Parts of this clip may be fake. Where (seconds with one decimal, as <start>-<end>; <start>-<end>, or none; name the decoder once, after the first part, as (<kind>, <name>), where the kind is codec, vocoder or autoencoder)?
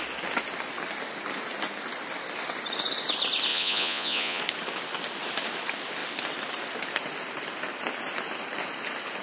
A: 3.5-4.4 (vocoder, Vocos)